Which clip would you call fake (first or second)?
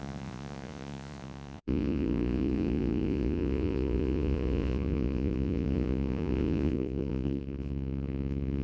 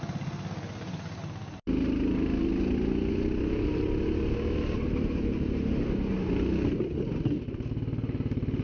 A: first